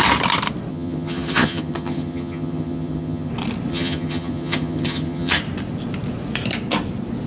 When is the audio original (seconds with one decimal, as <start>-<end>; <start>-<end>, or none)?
0.0-0.7; 3.3-3.7; 5.4-7.3